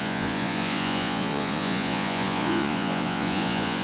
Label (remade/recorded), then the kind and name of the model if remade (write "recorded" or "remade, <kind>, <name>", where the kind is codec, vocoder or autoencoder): remade, vocoder, Vocos